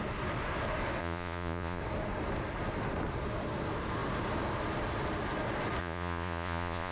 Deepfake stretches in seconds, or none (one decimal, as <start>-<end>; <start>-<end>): 1.0-1.8; 5.8-6.9